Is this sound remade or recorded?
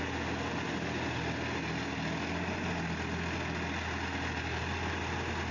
recorded